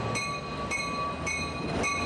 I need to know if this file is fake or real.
real